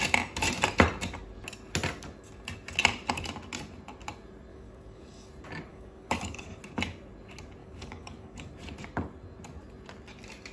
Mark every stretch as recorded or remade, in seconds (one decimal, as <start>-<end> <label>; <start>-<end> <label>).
0.0-4.5 recorded; 4.5-5.3 remade; 5.3-5.7 recorded; 5.7-6.6 remade; 6.6-7.6 recorded; 7.6-8.5 remade; 8.5-10.5 recorded